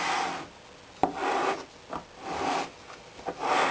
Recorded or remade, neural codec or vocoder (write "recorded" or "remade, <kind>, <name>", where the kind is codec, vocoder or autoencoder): recorded